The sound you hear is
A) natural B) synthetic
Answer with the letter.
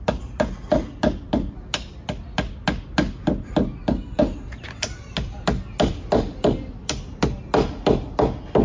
A